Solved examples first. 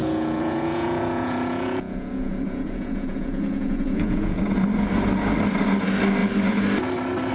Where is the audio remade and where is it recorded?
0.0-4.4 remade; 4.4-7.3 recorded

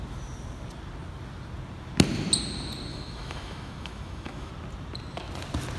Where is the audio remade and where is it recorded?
0.0-2.9 recorded; 2.9-4.5 remade; 4.5-5.8 recorded

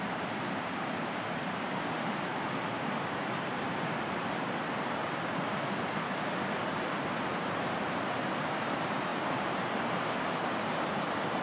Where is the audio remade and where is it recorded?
0.0-2.3 remade; 2.3-3.4 recorded; 3.4-11.4 remade

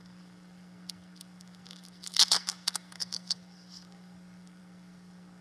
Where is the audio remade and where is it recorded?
0.0-5.4 remade

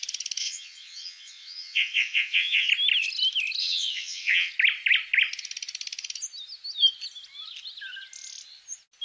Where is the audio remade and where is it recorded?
0.0-0.4 recorded; 0.4-2.7 remade; 2.7-3.6 recorded; 3.6-4.5 remade; 4.5-9.0 recorded